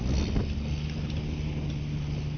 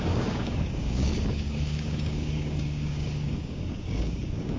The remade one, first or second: second